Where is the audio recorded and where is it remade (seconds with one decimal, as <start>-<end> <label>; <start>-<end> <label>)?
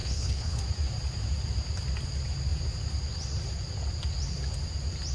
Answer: 0.0-0.6 remade; 0.6-5.1 recorded